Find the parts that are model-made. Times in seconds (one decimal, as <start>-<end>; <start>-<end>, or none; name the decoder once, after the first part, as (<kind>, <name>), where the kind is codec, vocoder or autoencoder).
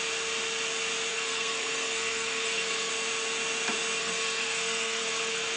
1.1-2.9 (codec, SNAC); 4.0-5.6